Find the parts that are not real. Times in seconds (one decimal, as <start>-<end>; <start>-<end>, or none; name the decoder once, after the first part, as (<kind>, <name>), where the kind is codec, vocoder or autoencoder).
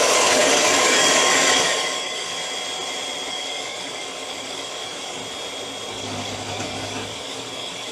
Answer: 0.0-2.3 (codec, DAC); 3.3-5.2; 5.9-7.9